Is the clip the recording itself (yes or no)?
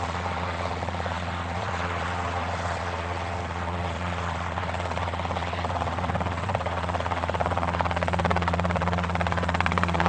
no